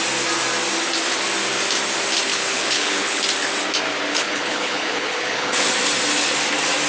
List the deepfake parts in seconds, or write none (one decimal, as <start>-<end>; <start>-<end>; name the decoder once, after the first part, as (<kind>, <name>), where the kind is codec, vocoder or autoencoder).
2.3-3.2 (codec, HILCodec); 4.1-5.7